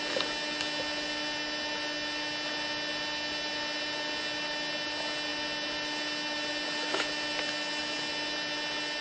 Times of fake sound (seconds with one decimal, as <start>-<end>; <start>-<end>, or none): none